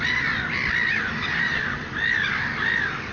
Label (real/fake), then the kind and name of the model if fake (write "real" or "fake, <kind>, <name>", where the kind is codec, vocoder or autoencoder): real